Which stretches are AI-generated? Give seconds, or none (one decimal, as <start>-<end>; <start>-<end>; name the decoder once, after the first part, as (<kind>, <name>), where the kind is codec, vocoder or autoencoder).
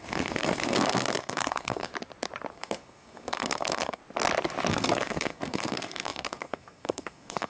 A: 0.0-1.9 (codec, SNAC); 2.5-4.0; 4.7-7.5